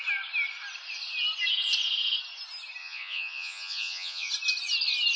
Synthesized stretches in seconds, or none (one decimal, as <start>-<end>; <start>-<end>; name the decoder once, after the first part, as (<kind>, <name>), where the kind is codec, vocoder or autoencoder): 2.8-4.3 (vocoder, Vocos)